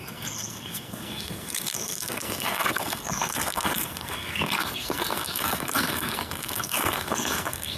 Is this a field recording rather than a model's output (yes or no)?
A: no